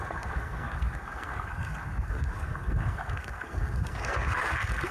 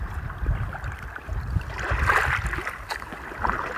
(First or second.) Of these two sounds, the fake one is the first